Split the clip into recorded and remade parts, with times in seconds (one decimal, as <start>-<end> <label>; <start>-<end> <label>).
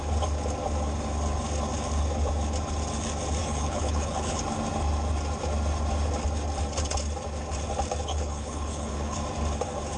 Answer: 0.0-3.4 recorded; 3.4-4.4 remade; 4.4-8.1 recorded; 8.1-9.2 remade; 9.2-10.0 recorded